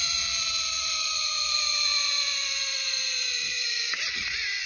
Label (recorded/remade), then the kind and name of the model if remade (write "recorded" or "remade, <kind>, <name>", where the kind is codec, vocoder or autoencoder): remade, vocoder, Vocos